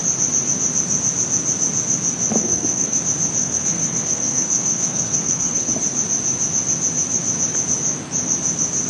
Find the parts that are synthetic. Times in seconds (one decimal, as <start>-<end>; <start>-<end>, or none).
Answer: 2.4-3.0; 3.4-5.7